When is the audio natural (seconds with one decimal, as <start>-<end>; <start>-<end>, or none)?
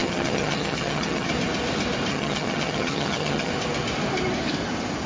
1.3-2.1; 3.5-5.1